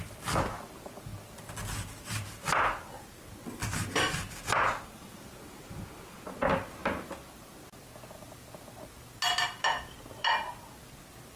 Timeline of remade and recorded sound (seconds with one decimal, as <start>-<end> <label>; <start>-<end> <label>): 0.0-11.4 recorded